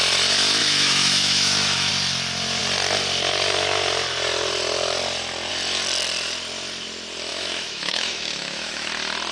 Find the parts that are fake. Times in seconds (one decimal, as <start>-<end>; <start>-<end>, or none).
0.6-1.9; 7.3-8.9

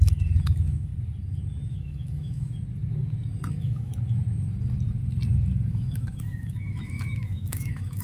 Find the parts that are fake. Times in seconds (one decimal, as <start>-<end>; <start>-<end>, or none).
0.0-0.9; 1.7-2.5; 3.5-3.9; 5.7-8.0

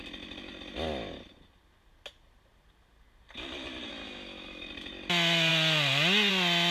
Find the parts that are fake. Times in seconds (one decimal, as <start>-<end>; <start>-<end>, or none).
3.9-4.7

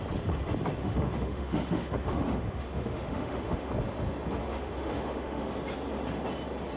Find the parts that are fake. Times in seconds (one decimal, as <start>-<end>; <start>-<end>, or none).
0.8-3.7; 4.4-5.5

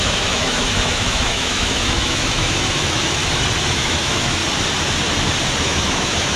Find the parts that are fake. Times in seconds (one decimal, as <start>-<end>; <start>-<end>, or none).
0.0-3.2; 3.7-4.4; 5.6-6.4